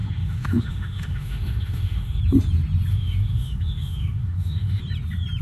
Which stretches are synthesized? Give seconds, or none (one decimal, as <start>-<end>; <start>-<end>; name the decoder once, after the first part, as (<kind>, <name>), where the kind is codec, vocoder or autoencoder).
0.0-2.2 (autoencoder, DAC-VAE); 2.9-4.8